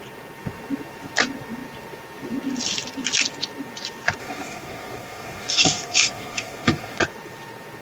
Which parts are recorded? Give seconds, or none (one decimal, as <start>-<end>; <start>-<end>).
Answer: 0.0-4.2; 7.0-7.8